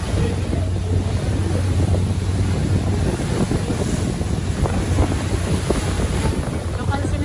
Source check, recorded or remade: recorded